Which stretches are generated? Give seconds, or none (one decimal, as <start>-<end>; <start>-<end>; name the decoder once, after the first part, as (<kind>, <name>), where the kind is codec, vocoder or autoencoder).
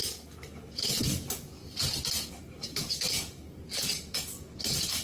0.0-1.6 (codec, DAC); 2.3-5.0